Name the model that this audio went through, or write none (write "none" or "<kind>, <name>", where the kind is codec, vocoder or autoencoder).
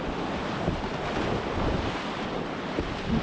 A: none